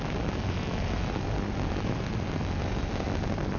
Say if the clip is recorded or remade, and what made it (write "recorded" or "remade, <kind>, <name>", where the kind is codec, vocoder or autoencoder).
recorded